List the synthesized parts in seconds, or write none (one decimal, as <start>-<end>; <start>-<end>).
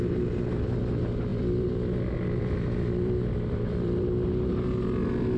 1.3-4.5